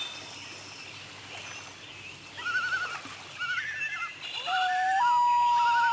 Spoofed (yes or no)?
no